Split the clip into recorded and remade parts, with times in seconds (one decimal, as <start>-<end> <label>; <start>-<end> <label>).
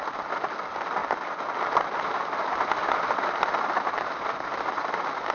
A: 0.0-5.3 recorded